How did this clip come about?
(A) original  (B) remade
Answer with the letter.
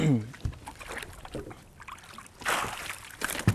A